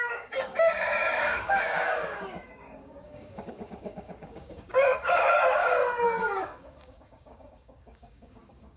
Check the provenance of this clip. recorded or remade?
remade